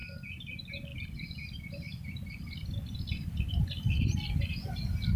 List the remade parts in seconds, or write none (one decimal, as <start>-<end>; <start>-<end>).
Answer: 0.0-0.5; 0.9-4.0